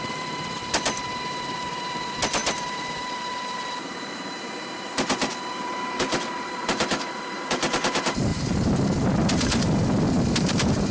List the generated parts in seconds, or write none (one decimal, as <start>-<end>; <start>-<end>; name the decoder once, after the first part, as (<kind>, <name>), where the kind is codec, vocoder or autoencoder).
0.0-10.9 (vocoder, BigVGAN v2)